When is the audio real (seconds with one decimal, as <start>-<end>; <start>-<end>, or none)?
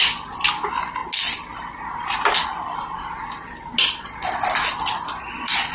0.0-5.7